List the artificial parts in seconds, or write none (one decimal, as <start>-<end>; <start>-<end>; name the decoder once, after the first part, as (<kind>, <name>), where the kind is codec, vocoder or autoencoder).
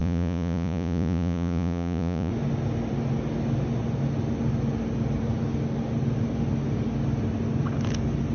0.0-2.3 (vocoder, Vocos)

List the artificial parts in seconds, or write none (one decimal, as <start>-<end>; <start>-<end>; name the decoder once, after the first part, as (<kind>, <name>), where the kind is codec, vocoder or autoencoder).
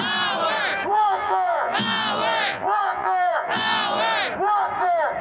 0.9-4.0 (vocoder, Vocos)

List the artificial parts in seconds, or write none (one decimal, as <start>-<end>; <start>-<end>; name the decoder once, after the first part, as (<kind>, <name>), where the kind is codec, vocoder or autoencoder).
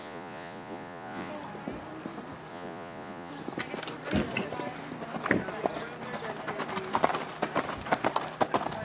0.0-1.3 (vocoder, Vocos); 2.5-3.3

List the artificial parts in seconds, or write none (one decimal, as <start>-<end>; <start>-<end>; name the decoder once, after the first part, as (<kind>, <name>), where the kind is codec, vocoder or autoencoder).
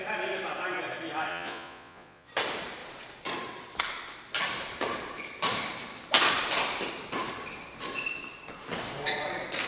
1.3-2.3 (vocoder, Vocos)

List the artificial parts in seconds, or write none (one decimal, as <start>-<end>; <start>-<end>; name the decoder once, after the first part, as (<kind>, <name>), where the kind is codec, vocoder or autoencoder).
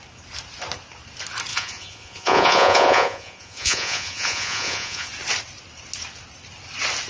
1.5-5.1 (vocoder, Vocos)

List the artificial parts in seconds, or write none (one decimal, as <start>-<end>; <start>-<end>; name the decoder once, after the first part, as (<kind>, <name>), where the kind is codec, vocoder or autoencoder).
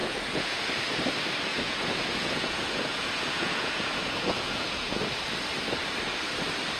0.0-0.7 (vocoder, Vocos); 1.5-5.1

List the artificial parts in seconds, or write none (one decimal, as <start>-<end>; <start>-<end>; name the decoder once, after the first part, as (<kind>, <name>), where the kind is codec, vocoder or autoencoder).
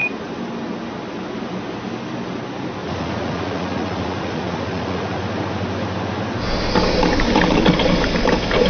2.8-5.2 (vocoder, Vocos)